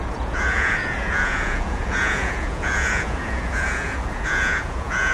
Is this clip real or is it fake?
fake